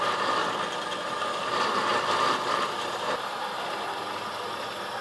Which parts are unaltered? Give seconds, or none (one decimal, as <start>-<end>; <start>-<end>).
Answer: 0.4-1.0